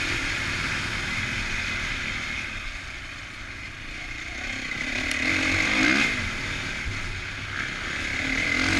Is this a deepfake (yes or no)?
no